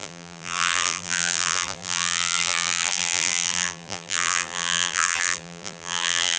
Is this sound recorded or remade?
remade